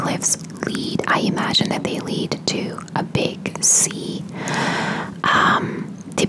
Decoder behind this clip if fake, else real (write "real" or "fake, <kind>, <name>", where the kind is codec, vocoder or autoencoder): real